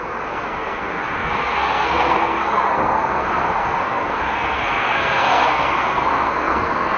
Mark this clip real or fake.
fake